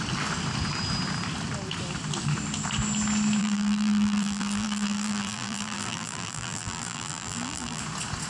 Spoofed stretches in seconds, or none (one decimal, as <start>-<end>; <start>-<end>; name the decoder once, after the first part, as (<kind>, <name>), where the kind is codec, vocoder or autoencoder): 3.4-7.8 (vocoder, BigVGAN v2)